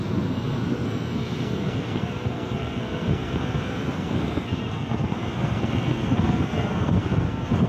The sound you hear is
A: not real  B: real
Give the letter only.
A